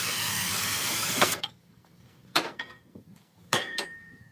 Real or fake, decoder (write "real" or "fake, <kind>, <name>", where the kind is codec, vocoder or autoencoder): fake, codec, SNAC